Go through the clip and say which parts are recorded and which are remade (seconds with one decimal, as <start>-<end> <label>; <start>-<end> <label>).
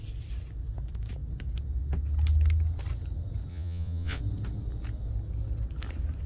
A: 0.0-3.5 recorded; 3.5-4.2 remade; 4.2-6.3 recorded